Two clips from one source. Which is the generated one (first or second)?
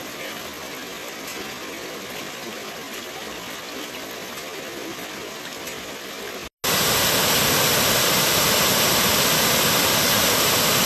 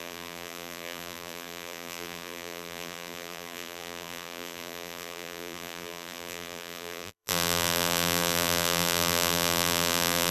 second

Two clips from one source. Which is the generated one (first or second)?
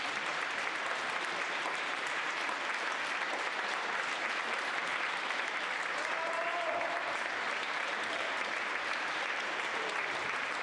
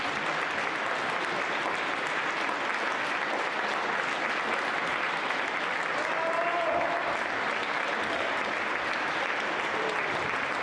first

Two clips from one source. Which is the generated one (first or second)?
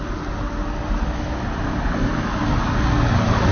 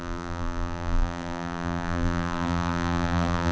second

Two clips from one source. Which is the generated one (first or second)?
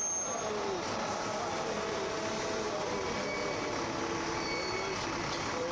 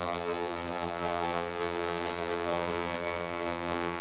second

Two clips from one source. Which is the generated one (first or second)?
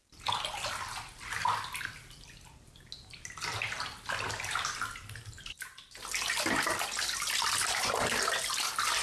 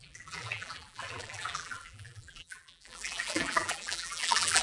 second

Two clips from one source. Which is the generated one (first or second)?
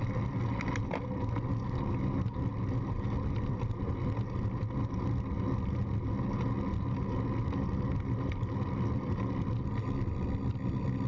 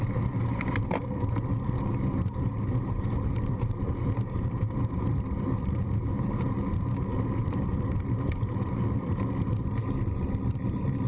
second